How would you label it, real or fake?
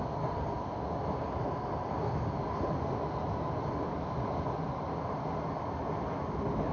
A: real